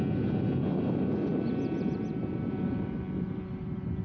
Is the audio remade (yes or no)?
no